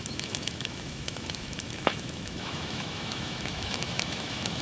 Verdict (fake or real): fake